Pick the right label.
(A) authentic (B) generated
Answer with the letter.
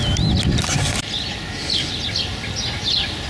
A